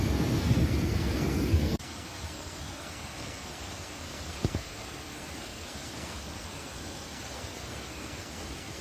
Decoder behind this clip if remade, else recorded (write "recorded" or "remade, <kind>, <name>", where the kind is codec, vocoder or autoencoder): remade, codec, SNAC